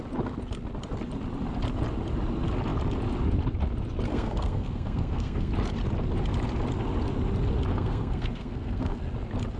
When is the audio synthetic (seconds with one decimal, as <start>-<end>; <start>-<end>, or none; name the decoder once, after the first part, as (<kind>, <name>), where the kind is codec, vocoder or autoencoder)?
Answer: 4.1-5.5 (codec, SNAC); 7.7-9.0